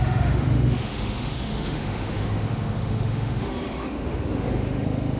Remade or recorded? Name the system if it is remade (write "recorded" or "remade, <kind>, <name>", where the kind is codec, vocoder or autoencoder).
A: remade, autoencoder, DAC-VAE